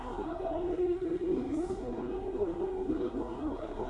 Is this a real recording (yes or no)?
no